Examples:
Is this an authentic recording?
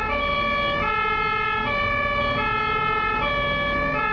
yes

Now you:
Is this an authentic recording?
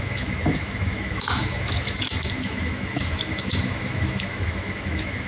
no